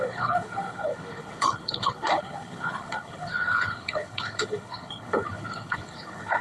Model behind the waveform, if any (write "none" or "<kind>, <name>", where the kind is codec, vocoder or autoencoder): codec, HILCodec